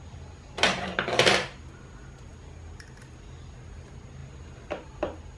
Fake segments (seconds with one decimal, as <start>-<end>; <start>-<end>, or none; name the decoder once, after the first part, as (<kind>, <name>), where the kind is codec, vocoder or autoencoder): none